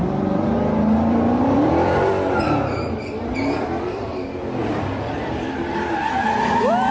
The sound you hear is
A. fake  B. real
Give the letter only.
A